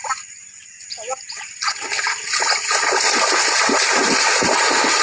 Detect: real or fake real